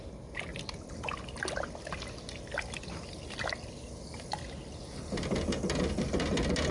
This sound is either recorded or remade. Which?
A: recorded